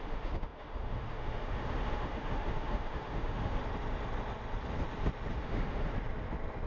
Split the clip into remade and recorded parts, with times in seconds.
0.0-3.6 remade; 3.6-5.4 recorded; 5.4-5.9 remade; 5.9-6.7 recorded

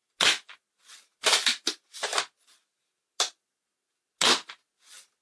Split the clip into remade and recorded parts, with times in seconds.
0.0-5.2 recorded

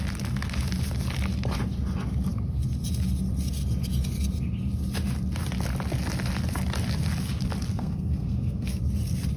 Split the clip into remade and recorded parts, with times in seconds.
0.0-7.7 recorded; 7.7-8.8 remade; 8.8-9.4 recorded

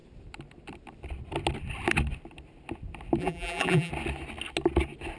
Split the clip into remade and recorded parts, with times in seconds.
0.0-3.2 recorded; 3.2-3.9 remade; 3.9-5.2 recorded

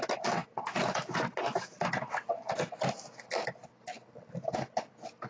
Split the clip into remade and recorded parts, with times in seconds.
0.0-5.3 recorded

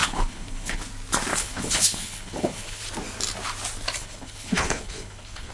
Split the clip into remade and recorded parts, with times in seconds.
0.0-0.8 remade; 0.8-1.3 recorded; 1.3-2.8 remade; 2.8-4.0 recorded; 4.0-5.5 remade

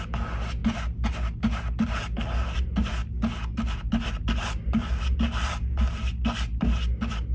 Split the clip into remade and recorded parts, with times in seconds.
0.0-7.3 recorded

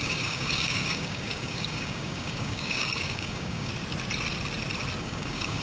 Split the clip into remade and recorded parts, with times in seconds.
0.0-3.7 remade; 3.7-5.0 recorded; 5.0-5.6 remade